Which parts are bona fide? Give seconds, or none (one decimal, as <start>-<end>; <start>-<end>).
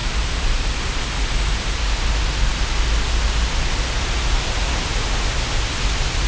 0.0-6.3